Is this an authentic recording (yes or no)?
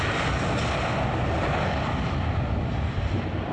yes